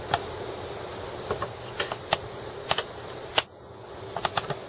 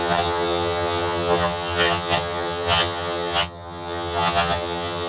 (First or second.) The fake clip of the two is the second